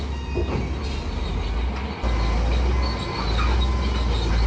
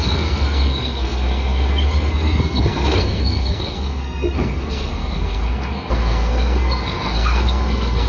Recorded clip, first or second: first